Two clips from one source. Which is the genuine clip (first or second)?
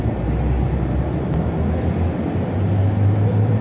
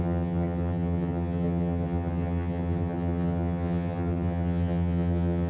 first